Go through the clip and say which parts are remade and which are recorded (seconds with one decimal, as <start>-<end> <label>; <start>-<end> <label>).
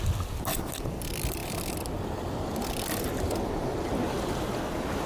0.0-5.1 recorded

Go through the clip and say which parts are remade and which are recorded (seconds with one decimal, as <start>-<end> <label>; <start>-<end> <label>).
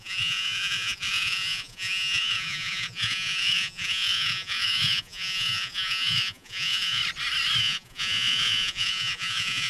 0.0-7.0 remade; 7.0-7.6 recorded; 7.6-9.7 remade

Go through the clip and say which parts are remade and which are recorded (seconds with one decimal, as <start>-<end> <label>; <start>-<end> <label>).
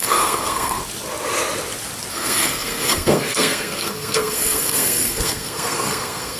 0.0-0.8 remade; 0.8-2.1 recorded; 2.1-6.4 remade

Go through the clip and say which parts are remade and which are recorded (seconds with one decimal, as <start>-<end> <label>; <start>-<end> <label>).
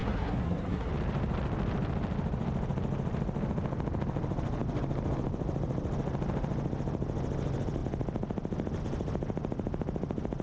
0.0-0.9 remade; 0.9-10.4 recorded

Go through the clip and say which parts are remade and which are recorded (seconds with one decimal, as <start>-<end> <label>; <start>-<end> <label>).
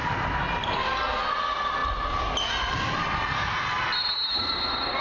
0.0-5.0 recorded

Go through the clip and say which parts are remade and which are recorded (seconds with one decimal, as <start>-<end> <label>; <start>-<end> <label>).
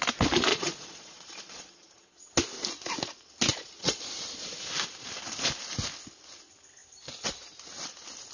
0.0-0.5 recorded; 0.5-2.3 remade; 2.3-3.5 recorded; 3.5-4.0 remade; 4.0-8.3 recorded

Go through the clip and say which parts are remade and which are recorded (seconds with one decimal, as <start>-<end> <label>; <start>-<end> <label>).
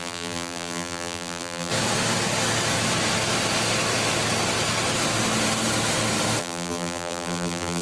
0.0-1.7 remade; 1.7-6.4 recorded; 6.4-7.8 remade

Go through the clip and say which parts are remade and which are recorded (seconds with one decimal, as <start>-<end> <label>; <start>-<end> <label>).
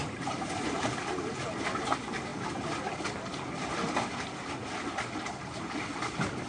0.0-6.5 recorded